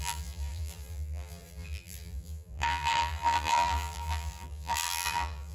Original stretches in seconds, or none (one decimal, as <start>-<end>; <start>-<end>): none